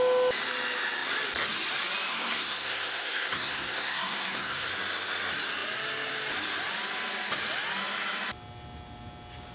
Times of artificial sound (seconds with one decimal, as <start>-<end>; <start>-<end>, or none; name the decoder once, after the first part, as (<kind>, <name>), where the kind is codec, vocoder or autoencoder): 2.1-4.7 (codec, SNAC)